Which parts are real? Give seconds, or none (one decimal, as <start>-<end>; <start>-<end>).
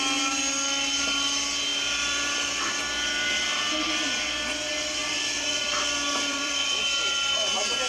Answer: 0.0-1.7; 2.8-5.0; 5.6-6.3; 6.8-7.9